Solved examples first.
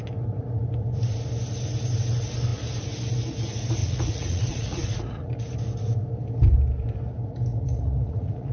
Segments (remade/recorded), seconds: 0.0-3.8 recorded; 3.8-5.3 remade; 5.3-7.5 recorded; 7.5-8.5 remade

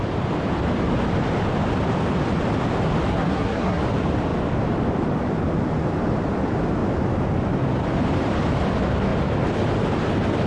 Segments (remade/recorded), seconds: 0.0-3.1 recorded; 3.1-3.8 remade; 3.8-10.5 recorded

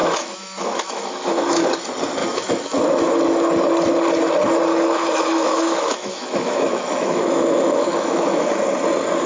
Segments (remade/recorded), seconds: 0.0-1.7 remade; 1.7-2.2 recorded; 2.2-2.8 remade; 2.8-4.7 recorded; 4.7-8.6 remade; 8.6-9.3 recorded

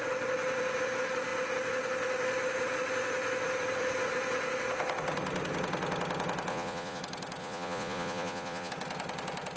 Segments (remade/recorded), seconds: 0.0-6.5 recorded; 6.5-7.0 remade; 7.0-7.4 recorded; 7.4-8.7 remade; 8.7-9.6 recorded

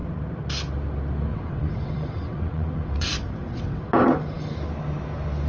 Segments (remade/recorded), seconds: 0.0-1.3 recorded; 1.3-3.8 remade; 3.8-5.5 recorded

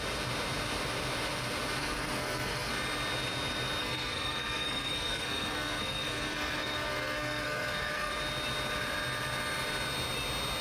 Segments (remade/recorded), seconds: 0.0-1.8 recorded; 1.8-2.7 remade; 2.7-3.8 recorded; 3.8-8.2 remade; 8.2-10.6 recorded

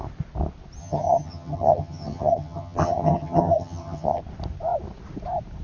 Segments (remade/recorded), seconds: 0.0-0.8 recorded; 0.8-4.2 remade; 4.2-5.6 recorded